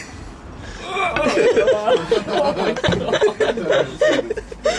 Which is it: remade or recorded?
recorded